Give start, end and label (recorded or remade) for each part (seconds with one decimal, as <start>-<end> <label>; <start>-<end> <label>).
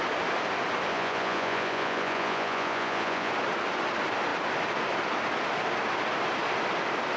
0.0-0.9 recorded; 0.9-3.3 remade; 3.3-7.2 recorded